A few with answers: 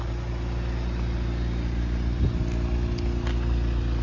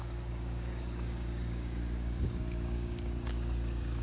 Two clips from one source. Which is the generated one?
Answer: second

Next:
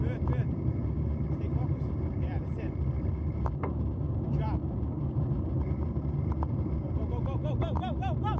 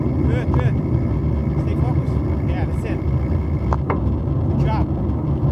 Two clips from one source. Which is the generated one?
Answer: first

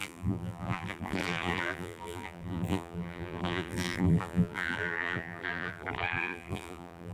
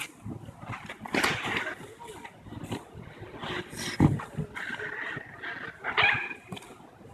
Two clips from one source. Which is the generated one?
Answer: first